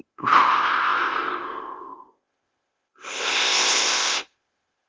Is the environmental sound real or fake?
fake